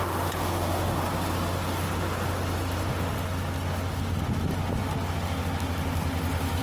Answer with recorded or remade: recorded